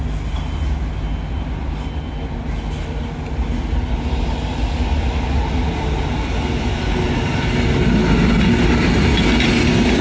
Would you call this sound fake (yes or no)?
no